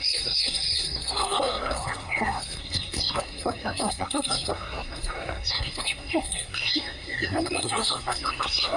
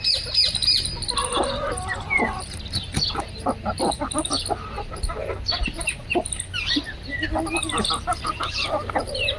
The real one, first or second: second